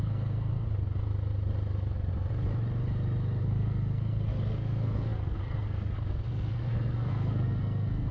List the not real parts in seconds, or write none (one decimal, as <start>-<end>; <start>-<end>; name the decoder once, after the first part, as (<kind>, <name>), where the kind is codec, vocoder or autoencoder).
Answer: 0.0-0.7 (codec, SNAC); 3.4-8.1